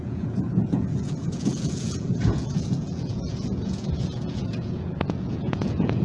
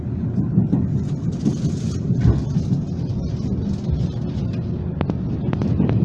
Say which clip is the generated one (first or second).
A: first